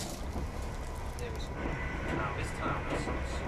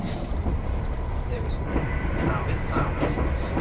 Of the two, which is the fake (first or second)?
second